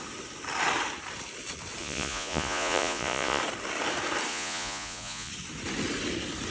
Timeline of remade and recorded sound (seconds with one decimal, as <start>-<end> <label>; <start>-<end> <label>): 0.0-1.8 recorded; 1.8-3.4 remade; 3.4-4.3 recorded; 4.3-5.3 remade; 5.3-6.5 recorded